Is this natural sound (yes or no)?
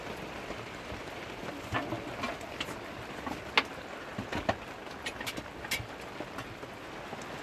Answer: yes